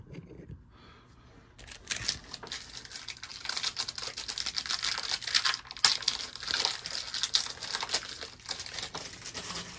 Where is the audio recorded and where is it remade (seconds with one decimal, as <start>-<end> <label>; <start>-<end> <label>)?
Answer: 0.0-9.8 recorded